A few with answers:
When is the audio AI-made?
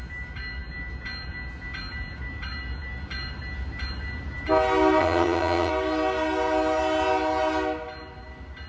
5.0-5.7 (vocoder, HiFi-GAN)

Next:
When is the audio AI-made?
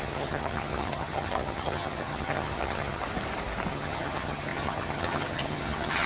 0.0-3.0 (vocoder, HiFi-GAN); 3.7-6.1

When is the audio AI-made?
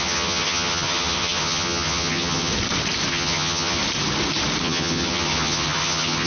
0.0-2.5 (vocoder, HiFi-GAN); 3.1-3.8; 4.6-6.3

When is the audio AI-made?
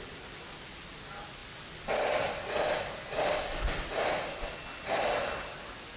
none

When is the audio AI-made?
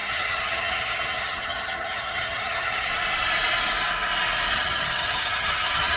0.0-2.9 (vocoder, HiFi-GAN); 4.5-6.0